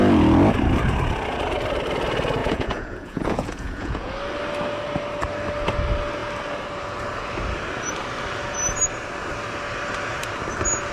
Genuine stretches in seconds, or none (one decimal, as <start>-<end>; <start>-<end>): 0.0-2.4; 4.1-10.9